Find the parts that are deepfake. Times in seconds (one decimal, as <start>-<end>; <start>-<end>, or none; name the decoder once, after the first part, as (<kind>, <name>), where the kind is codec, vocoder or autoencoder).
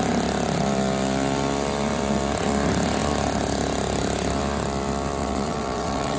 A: 5.2-6.2 (vocoder, WaveNeXt)